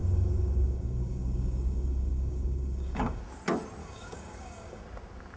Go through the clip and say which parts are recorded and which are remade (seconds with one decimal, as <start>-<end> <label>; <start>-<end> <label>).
0.0-3.2 remade; 3.2-3.8 recorded; 3.8-4.8 remade; 4.8-5.4 recorded